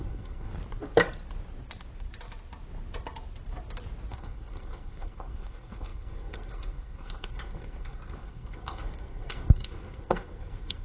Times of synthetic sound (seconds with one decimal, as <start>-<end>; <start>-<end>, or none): 0.0-0.5; 4.1-10.8